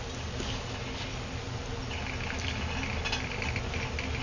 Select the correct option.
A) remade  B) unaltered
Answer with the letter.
B